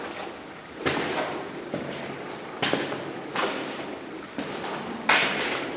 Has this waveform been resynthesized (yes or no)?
no